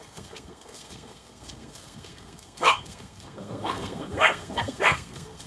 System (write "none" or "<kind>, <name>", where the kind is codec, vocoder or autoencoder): codec, SNAC